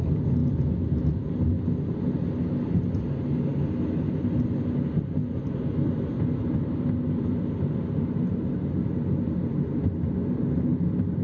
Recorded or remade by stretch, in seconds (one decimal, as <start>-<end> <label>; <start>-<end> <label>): 0.0-11.2 recorded